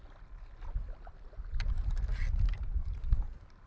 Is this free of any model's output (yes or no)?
yes